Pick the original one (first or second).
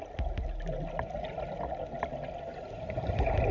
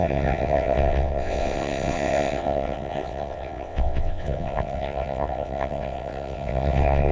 first